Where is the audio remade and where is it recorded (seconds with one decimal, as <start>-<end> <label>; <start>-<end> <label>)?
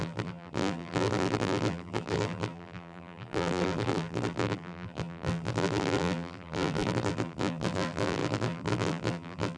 0.0-9.6 remade